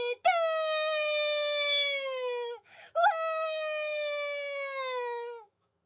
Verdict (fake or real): fake